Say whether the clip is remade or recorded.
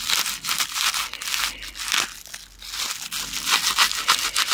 recorded